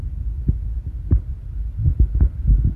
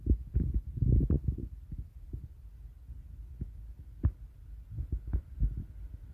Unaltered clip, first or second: second